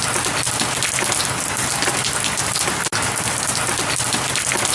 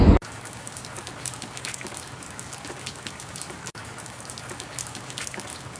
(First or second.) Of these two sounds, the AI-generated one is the second